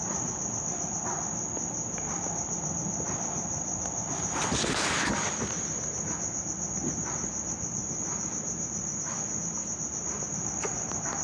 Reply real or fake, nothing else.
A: real